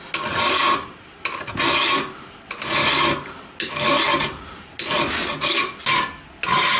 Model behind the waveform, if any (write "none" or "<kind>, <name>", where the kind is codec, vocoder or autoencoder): none